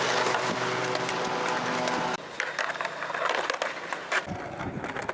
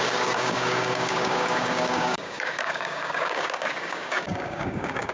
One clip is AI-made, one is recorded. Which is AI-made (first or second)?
second